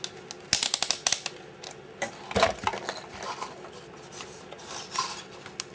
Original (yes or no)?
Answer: yes